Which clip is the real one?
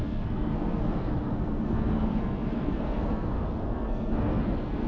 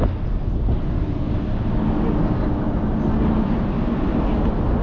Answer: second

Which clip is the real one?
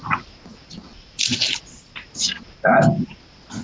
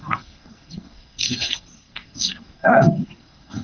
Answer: first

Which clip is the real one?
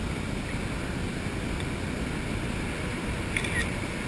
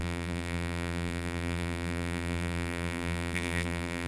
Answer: first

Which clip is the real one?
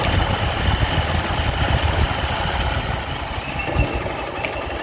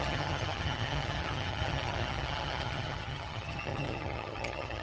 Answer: first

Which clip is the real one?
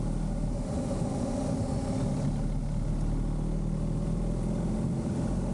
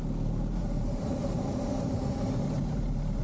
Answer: first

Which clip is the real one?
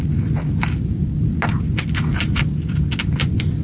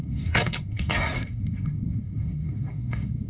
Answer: first